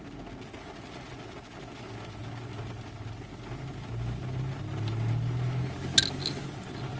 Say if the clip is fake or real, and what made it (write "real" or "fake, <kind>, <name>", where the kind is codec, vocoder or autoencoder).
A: real